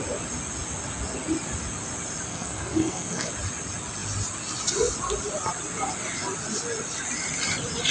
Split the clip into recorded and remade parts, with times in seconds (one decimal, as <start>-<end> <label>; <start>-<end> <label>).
0.0-2.3 recorded; 2.3-3.3 remade; 3.3-7.9 recorded